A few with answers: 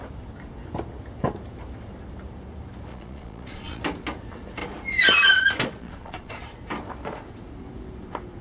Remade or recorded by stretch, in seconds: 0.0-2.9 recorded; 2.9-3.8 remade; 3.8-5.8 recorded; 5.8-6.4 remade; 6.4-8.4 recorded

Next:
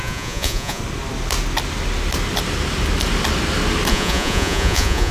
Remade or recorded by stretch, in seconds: 0.0-0.8 remade; 0.8-3.9 recorded; 3.9-5.1 remade

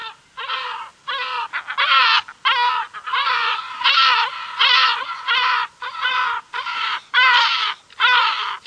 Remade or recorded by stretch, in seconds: 0.0-3.2 recorded; 3.2-3.9 remade; 3.9-4.4 recorded; 4.4-7.1 remade; 7.1-8.7 recorded

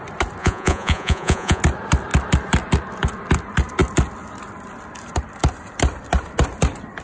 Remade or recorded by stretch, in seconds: 0.0-0.4 recorded; 0.4-1.6 remade; 1.6-7.0 recorded

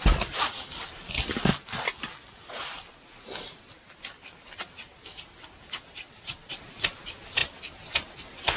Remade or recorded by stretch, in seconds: 0.0-8.6 recorded

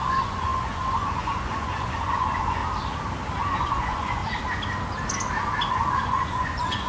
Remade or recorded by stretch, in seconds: 0.0-2.6 remade; 2.6-3.4 recorded; 3.4-4.2 remade; 4.2-5.7 recorded; 5.7-6.9 remade

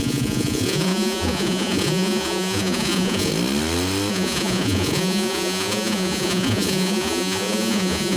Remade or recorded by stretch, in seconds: 0.0-3.3 remade; 3.3-4.1 recorded; 4.1-8.2 remade